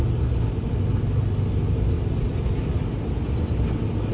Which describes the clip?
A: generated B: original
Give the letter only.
B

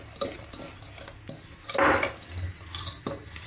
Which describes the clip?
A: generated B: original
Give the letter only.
B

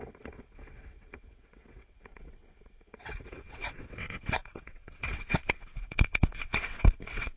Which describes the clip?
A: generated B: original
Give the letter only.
A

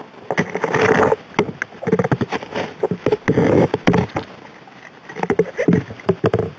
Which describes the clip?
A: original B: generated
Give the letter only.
A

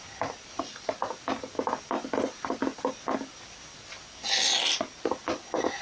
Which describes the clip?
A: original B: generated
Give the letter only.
A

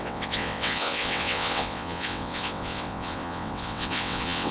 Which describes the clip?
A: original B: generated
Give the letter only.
B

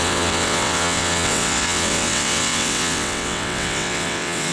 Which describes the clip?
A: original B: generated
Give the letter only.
B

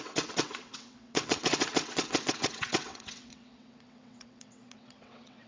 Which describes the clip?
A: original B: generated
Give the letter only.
B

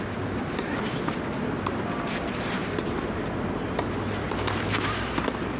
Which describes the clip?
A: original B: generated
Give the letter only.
A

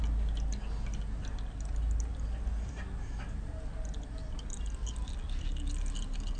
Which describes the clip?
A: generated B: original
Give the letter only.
B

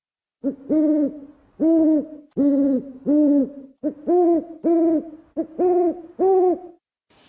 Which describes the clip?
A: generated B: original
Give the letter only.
B